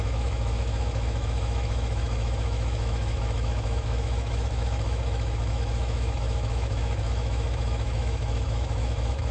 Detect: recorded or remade remade